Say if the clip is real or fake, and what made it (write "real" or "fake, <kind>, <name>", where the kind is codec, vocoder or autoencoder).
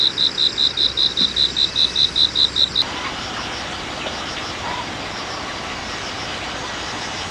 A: fake, vocoder, BigVGAN v2